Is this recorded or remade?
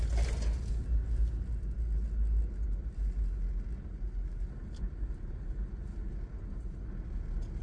recorded